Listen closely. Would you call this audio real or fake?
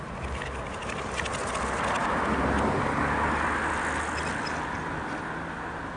real